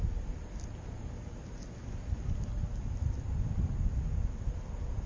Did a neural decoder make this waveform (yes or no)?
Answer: no